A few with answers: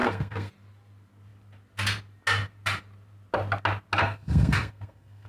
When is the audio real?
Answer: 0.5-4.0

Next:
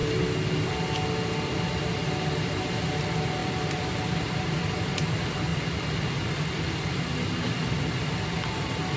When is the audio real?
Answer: 0.0-3.4; 4.5-5.5; 6.4-9.0

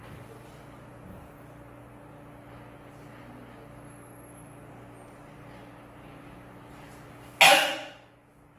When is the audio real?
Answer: 0.0-8.6

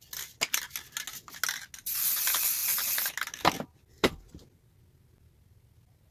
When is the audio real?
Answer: 0.0-6.1

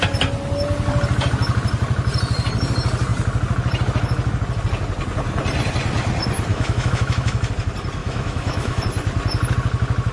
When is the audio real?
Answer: 0.0-6.5; 7.5-8.0; 8.8-10.1

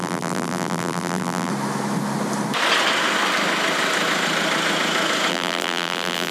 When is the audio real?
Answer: 1.5-5.3

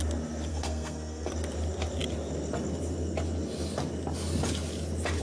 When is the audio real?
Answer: 0.0-0.5; 1.3-5.2

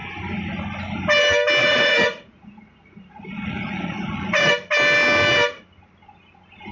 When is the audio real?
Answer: 0.0-1.6; 4.5-6.7